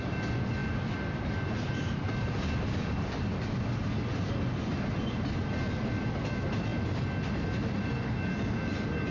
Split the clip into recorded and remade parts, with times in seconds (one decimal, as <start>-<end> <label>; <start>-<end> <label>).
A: 0.0-9.1 recorded